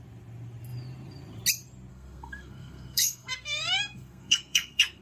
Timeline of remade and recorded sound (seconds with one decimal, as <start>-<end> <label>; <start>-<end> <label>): 0.0-1.9 recorded; 1.9-5.0 remade